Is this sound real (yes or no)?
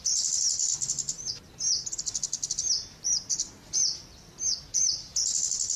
yes